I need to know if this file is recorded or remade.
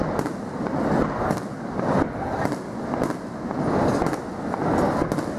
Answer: recorded